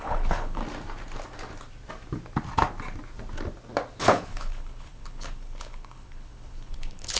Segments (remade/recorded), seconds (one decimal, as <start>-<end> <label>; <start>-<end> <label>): 0.0-0.6 remade; 0.6-4.0 recorded; 4.0-7.2 remade